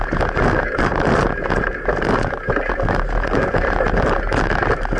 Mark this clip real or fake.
real